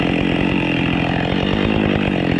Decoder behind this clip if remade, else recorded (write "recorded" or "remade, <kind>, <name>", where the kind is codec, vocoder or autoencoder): recorded